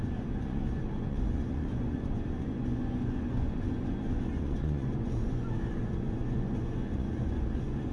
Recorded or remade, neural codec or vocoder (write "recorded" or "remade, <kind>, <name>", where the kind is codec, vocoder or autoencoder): remade, vocoder, Vocos